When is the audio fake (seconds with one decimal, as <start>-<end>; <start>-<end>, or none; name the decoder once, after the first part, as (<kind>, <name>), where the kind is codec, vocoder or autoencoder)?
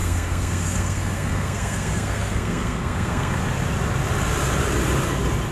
0.0-3.3 (codec, SNAC)